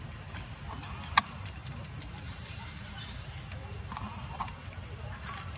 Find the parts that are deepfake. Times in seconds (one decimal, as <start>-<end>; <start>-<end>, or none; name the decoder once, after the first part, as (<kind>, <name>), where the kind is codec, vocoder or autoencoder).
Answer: 1.6-3.1 (vocoder, BigVGAN v2)